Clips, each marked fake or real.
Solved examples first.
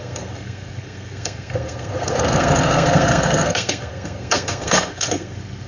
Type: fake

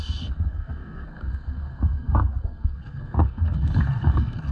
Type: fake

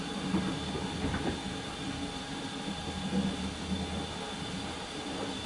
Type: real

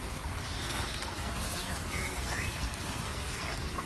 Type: fake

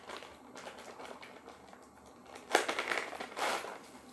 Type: real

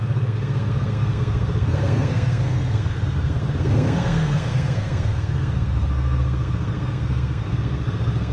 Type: fake